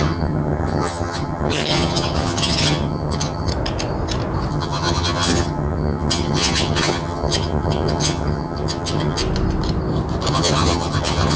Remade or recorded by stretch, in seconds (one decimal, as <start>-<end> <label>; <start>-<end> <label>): 0.0-3.5 remade; 3.5-4.5 recorded; 4.5-9.2 remade; 9.2-10.3 recorded; 10.3-11.4 remade